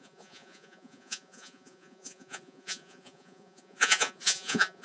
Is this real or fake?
fake